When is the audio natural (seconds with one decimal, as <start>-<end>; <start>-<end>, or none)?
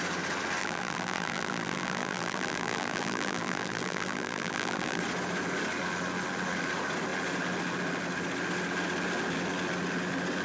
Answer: 0.0-0.6; 5.0-10.4